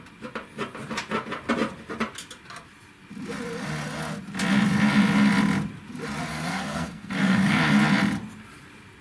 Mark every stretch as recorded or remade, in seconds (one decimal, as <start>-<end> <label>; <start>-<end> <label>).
0.0-6.3 recorded; 6.3-7.6 remade; 7.6-9.0 recorded